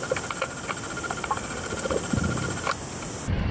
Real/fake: real